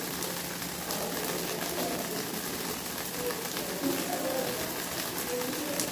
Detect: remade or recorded recorded